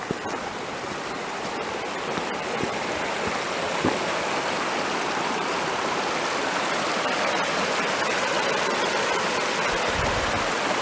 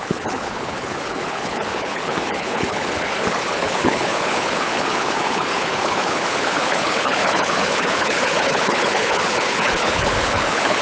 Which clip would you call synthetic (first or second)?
second